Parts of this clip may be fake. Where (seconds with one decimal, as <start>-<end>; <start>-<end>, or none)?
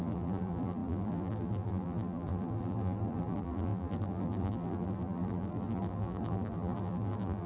0.0-7.5